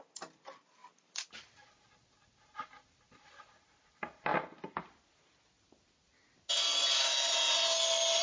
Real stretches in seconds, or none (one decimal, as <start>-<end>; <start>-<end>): 0.0-8.2